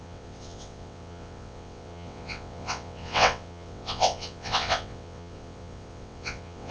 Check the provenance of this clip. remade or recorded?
remade